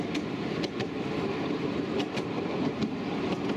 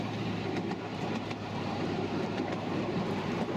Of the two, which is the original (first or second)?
first